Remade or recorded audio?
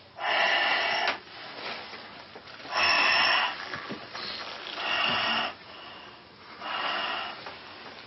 recorded